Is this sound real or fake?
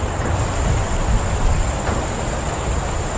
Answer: real